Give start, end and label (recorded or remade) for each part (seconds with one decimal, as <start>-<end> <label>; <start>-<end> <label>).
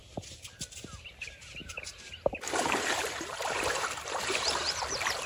0.0-1.6 recorded; 1.6-4.8 remade; 4.8-5.3 recorded